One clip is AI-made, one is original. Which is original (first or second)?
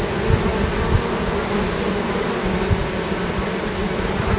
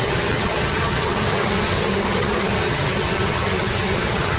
first